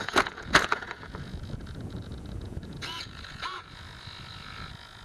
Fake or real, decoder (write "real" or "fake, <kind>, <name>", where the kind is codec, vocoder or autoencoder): fake, vocoder, Vocos